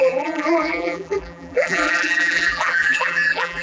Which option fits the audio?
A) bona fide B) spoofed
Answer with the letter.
B